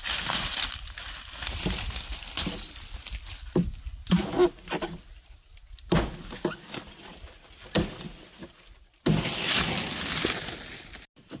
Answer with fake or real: real